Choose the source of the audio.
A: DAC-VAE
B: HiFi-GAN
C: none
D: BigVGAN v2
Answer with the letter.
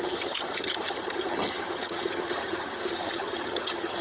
B